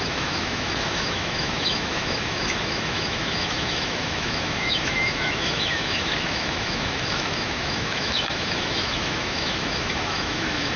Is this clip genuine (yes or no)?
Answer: no